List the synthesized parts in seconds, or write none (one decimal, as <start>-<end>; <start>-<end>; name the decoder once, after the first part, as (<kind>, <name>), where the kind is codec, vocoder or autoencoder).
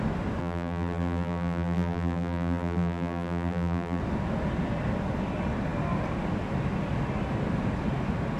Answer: 0.4-4.0 (vocoder, BigVGAN v2)